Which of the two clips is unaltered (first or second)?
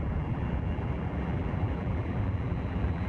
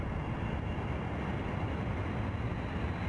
second